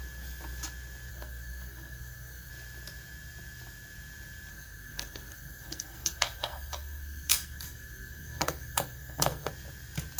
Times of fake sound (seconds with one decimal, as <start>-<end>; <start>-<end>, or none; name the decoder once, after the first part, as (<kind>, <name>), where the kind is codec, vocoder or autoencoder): 1.1-2.5 (codec, SNAC); 4.5-9.5